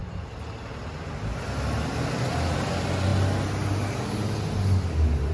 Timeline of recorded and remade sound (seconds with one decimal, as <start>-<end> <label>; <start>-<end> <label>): 0.0-5.3 recorded